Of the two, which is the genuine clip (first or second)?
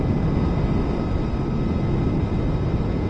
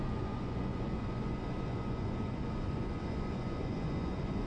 first